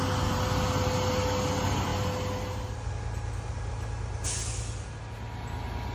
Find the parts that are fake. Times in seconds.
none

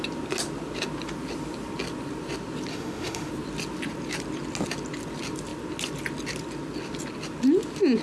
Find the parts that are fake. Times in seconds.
2.7-3.3 (autoencoder, DAC-VAE)

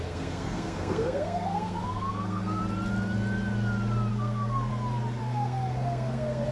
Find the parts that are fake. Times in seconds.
0.0-2.6 (codec, SNAC); 4.1-4.7; 5.2-6.5